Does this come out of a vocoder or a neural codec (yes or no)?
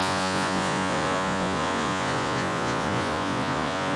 yes